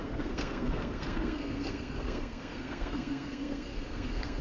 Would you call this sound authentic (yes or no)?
no